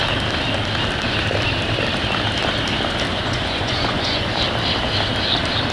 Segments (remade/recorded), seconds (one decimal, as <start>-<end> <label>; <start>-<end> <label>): 0.0-3.1 recorded; 3.1-4.3 remade; 4.3-5.7 recorded